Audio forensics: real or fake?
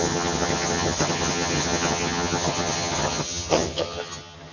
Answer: fake